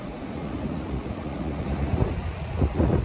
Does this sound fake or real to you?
fake